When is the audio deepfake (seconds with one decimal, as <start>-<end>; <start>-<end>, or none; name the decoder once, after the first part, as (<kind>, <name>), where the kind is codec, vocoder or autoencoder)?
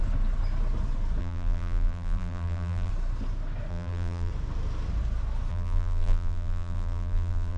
1.2-2.9 (vocoder, BigVGAN v2); 3.7-4.3; 5.5-7.6